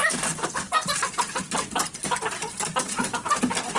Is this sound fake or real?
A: real